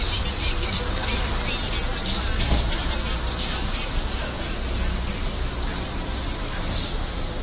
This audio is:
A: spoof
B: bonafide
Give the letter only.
B